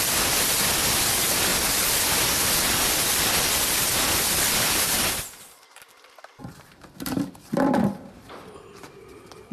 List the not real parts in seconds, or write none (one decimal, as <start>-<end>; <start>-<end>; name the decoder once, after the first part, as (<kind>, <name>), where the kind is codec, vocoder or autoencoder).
0.0-1.5 (vocoder, BigVGAN v2); 4.1-9.5